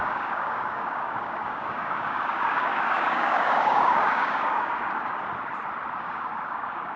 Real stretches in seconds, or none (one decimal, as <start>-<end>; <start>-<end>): 5.3-5.9